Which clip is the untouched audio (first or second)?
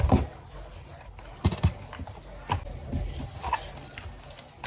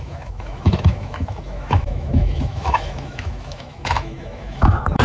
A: first